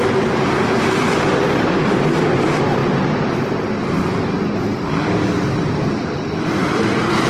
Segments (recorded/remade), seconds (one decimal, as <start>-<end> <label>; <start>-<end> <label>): 0.0-2.8 remade; 2.8-6.5 recorded; 6.5-7.3 remade